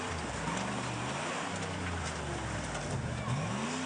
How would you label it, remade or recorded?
recorded